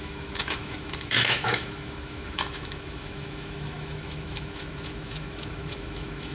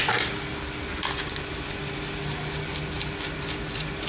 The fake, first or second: first